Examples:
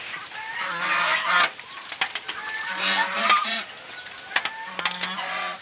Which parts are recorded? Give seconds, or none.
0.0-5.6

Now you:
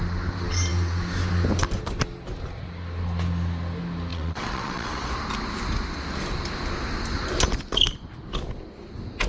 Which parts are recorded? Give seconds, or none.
0.0-4.1; 5.1-9.3

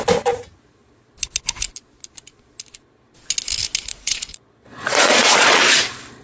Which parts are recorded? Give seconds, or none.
0.0-3.9; 5.6-6.2

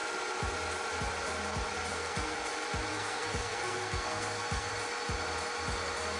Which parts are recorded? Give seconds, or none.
0.0-1.9; 2.5-2.9; 4.7-6.2

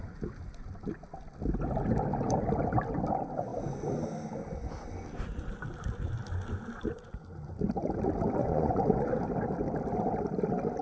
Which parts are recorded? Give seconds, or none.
0.0-8.4; 9.1-10.8

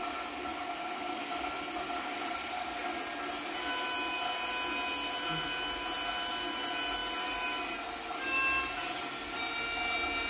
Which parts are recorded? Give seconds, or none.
0.0-10.3

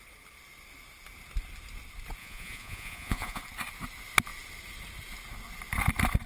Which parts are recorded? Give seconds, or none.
0.0-2.2; 3.4-6.3

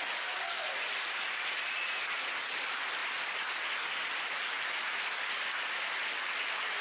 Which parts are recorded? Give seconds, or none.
0.0-6.8